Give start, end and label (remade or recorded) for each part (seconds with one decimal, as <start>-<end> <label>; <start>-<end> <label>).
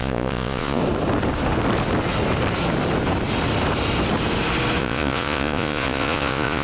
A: 0.0-0.8 remade; 0.8-4.8 recorded; 4.8-6.6 remade